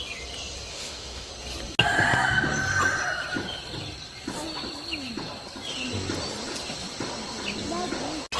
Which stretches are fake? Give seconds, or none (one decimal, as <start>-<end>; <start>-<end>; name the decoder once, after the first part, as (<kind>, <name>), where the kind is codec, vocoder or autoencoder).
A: 0.7-1.3 (autoencoder, DAC-VAE)